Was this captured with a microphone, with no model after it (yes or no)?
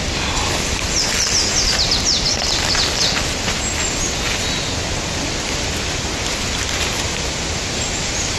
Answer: yes